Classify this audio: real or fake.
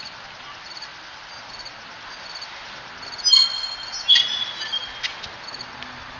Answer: real